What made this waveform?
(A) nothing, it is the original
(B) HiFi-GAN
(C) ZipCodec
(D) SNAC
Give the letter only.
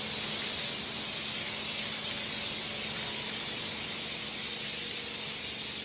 A